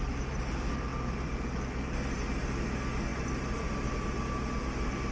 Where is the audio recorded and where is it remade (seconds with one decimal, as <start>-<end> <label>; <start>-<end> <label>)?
0.0-5.1 recorded